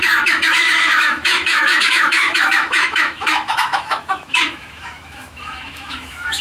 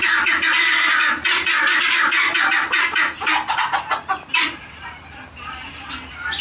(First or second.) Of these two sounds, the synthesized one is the first